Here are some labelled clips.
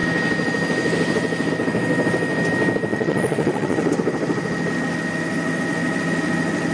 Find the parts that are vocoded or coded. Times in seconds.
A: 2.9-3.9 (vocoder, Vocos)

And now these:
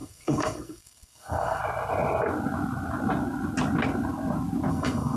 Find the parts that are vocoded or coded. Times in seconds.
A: 0.0-1.6 (codec, SNAC); 4.7-5.2

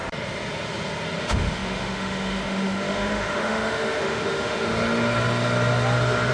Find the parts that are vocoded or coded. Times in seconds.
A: 1.2-4.7 (autoencoder, DAC-VAE)

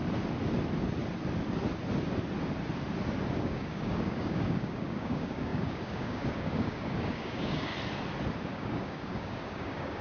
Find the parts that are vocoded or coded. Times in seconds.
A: 3.3-7.7 (codec, DAC); 8.5-10.0

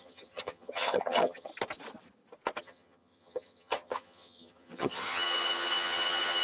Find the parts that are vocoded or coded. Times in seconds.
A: 0.0-1.5 (vocoder, HiFi-GAN); 2.6-6.4

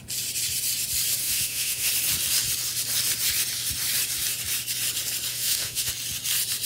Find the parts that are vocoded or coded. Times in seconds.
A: 1.2-1.9 (autoencoder, DAC-VAE); 5.3-5.9

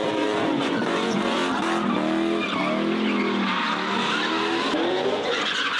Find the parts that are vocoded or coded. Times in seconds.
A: 0.0-1.4 (vocoder, Vocos); 4.9-5.8

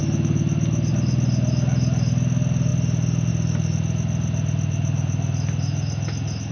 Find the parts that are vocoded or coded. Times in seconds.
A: none